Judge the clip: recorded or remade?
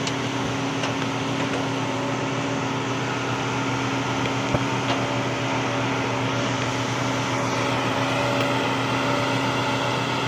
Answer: recorded